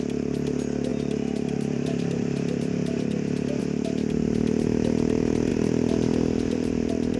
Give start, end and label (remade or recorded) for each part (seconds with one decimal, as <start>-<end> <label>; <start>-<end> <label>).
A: 0.0-0.9 recorded; 0.9-3.6 remade; 3.6-5.5 recorded; 5.5-7.2 remade